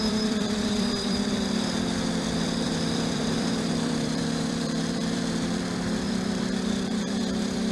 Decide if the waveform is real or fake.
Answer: fake